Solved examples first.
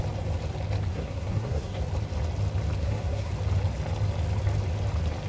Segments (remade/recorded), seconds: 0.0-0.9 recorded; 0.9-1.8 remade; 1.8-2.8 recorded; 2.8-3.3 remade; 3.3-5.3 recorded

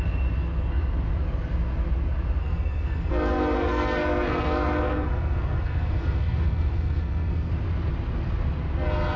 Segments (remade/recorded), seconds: 0.0-2.4 recorded; 2.4-7.5 remade; 7.5-9.2 recorded